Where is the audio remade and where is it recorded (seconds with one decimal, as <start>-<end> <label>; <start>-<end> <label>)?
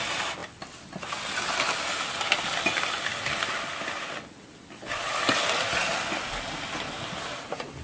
0.0-7.8 recorded